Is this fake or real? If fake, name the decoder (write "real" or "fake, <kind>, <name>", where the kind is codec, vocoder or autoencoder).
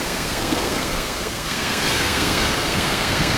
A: fake, codec, SNAC